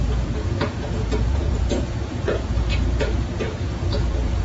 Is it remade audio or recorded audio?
remade